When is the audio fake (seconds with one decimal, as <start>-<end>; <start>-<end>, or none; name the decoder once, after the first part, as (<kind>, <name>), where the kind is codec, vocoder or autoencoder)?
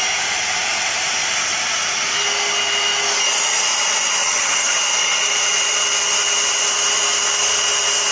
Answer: 4.2-4.7 (vocoder, HiFi-GAN)